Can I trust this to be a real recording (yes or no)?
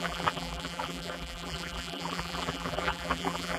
no